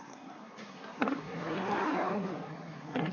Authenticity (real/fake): fake